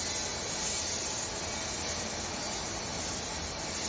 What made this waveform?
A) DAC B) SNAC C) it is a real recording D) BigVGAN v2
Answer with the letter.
C